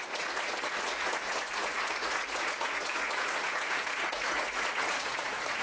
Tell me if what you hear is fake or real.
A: fake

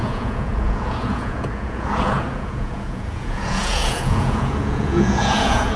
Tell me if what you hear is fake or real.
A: fake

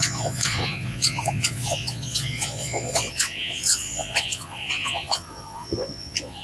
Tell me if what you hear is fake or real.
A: fake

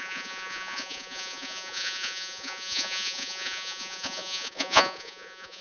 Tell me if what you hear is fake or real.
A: fake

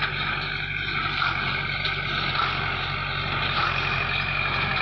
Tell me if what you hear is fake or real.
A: real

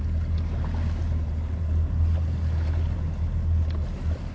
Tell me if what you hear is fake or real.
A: real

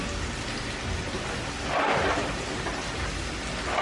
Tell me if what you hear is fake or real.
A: real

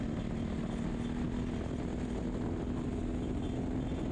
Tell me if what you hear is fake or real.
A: real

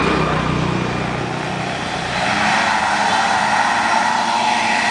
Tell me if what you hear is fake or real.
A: real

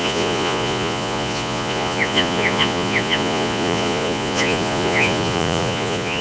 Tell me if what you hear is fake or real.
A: fake